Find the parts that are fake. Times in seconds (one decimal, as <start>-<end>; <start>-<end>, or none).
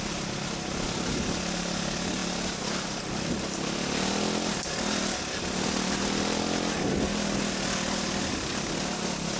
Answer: none